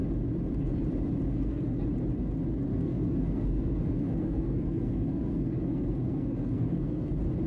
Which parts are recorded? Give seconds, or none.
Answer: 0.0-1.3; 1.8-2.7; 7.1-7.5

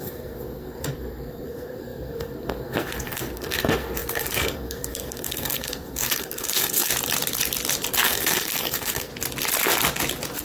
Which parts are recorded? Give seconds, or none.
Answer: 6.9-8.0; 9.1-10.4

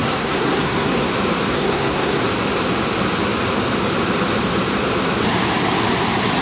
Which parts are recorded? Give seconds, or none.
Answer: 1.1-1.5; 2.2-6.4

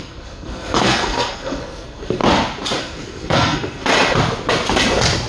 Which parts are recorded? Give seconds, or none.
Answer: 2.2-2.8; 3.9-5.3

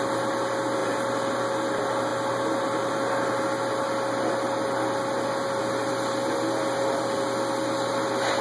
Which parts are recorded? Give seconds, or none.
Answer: 0.0-8.4